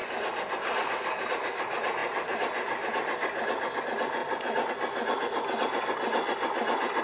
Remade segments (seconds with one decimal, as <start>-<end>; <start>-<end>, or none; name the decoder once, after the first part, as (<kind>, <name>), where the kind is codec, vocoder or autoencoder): 0.0-1.3 (vocoder, BigVGAN v2)